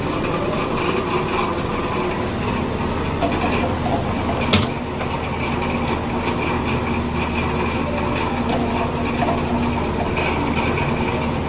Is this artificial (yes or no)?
no